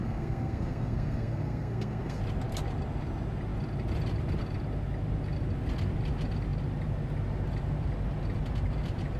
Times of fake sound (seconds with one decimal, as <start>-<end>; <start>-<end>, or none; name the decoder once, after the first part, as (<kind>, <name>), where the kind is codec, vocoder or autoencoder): 0.0-2.2 (codec, SNAC)